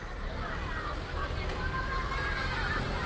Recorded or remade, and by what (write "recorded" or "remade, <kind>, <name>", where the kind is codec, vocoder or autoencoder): remade, vocoder, BigVGAN v2